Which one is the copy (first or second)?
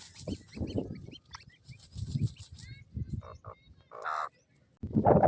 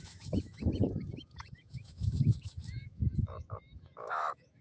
second